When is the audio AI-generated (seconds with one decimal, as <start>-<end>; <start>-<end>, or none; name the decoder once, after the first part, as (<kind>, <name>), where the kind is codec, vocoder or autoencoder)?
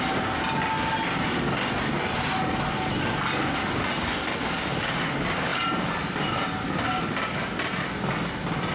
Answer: none